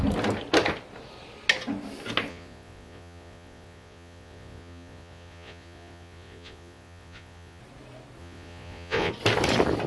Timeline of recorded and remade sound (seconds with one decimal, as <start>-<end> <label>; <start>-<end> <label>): 0.0-2.3 recorded; 2.3-7.6 remade; 7.6-8.2 recorded; 8.2-9.1 remade; 9.1-9.9 recorded